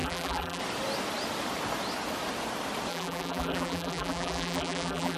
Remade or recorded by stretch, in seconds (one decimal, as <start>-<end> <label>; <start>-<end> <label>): 0.0-0.6 remade; 0.6-2.9 recorded; 2.9-5.2 remade